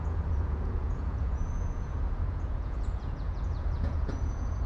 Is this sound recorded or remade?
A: remade